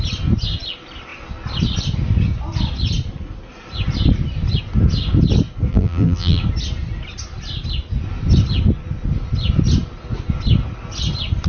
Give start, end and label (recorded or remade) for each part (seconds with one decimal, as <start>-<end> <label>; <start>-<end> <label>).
0.0-5.7 recorded; 5.7-6.4 remade; 6.4-11.5 recorded